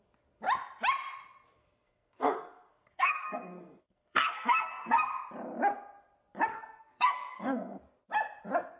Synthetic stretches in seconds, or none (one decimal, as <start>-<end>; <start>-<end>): 1.6-5.1; 6.5-7.8